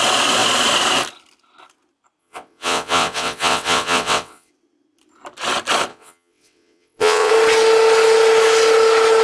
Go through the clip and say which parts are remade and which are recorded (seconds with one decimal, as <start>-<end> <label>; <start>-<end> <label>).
0.0-2.2 recorded; 2.2-4.5 remade; 4.5-5.9 recorded; 5.9-7.3 remade; 7.3-9.2 recorded